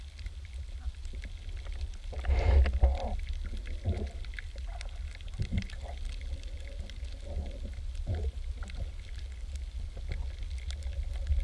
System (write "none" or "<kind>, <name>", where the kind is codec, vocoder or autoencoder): none